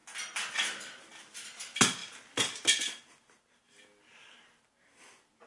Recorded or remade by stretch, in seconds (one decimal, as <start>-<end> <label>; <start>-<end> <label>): 0.0-5.5 recorded